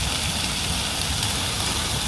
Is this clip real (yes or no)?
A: yes